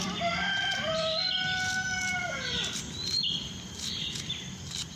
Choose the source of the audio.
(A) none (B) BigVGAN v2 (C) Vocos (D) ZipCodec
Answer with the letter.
B